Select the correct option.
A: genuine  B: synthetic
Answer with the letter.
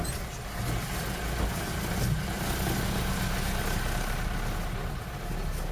A